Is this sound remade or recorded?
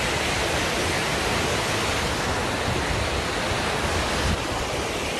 recorded